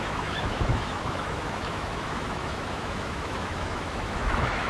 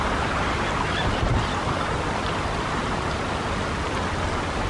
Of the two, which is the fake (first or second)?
first